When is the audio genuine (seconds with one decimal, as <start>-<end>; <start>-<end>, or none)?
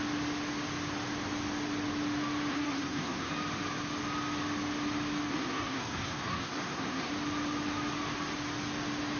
0.0-2.5; 3.3-5.3; 7.1-9.2